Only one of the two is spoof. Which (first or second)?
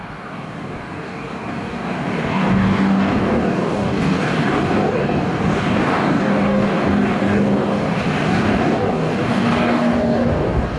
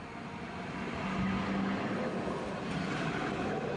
first